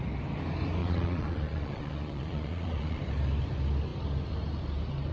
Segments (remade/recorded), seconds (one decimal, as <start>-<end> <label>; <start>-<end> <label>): 0.0-0.8 recorded; 0.8-3.0 remade; 3.0-5.1 recorded